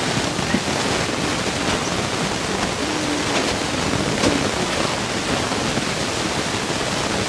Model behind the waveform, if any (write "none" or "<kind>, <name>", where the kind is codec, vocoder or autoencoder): none